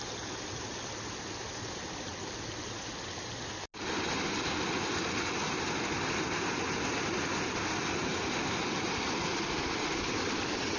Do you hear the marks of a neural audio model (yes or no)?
no